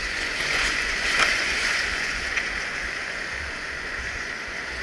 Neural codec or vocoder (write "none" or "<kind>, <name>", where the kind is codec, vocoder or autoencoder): vocoder, Vocos